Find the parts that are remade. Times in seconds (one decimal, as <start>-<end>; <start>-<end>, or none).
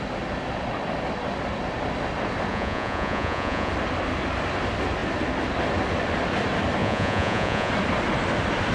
2.5-3.7; 6.8-7.7